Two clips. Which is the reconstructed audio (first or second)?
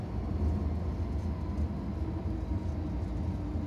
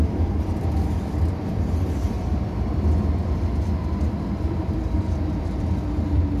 second